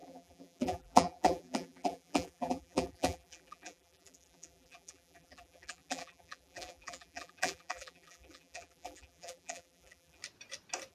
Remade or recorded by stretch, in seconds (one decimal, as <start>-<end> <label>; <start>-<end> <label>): 0.0-10.2 remade; 10.2-10.9 recorded